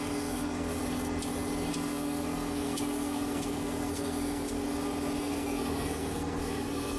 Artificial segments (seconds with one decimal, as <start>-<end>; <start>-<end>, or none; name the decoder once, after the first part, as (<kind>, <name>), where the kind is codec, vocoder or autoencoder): 0.0-0.8 (codec, SNAC); 1.7-4.6; 5.2-7.0